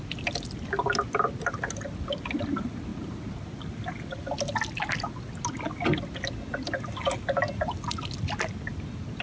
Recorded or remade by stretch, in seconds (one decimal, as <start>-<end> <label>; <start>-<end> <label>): 0.0-9.2 recorded